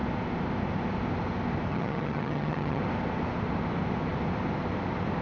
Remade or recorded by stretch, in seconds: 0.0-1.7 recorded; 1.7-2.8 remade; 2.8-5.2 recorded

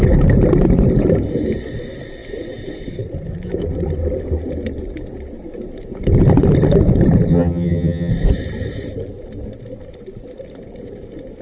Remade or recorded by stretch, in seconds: 0.0-7.3 recorded; 7.3-8.1 remade; 8.1-11.4 recorded

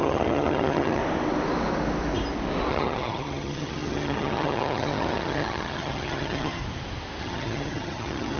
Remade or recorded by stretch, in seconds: 0.0-1.0 remade; 1.0-2.7 recorded; 2.7-6.6 remade; 6.6-7.2 recorded; 7.2-8.4 remade

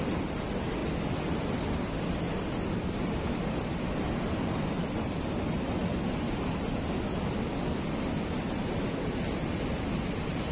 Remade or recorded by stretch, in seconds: 0.0-10.5 recorded

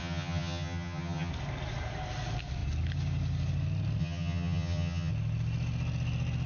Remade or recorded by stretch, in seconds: 0.0-1.3 remade; 1.3-4.0 recorded; 4.0-5.1 remade; 5.1-6.5 recorded

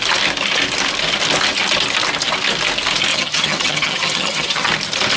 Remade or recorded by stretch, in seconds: 0.0-3.1 recorded; 3.1-4.7 remade; 4.7-5.2 recorded